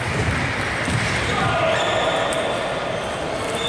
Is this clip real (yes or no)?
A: yes